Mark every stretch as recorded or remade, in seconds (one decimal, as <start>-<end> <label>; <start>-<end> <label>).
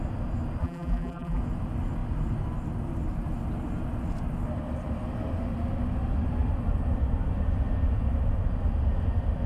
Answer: 0.0-0.6 recorded; 0.6-1.4 remade; 1.4-9.5 recorded